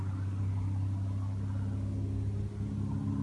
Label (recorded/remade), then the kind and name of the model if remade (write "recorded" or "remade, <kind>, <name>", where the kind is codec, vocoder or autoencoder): recorded